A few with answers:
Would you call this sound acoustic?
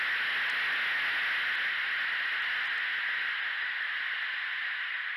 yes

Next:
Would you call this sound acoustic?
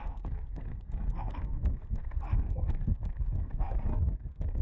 no